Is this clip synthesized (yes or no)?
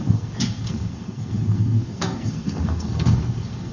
yes